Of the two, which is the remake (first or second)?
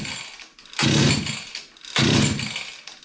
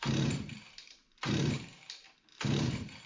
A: second